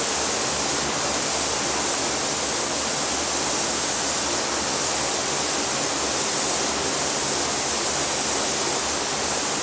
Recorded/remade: recorded